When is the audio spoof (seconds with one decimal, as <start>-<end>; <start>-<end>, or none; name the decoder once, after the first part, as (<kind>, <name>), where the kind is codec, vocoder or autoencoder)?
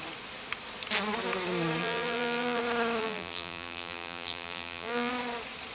1.8-2.6 (vocoder, BigVGAN v2); 3.0-5.1